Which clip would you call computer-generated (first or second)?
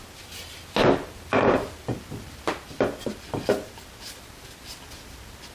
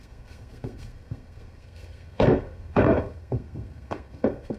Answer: second